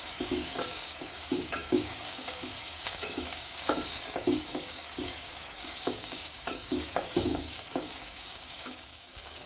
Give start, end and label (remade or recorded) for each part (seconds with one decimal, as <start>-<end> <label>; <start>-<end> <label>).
0.0-9.5 remade